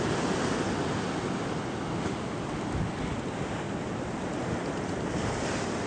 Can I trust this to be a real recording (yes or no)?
yes